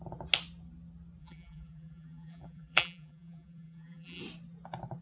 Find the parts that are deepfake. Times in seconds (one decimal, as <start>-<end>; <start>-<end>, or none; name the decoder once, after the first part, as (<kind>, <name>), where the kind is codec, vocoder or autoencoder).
1.2-4.2 (vocoder, BigVGAN v2)